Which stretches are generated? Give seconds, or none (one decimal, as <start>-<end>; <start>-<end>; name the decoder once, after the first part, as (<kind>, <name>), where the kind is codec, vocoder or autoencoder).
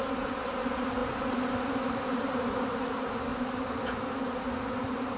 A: 3.3-4.2 (vocoder, BigVGAN v2)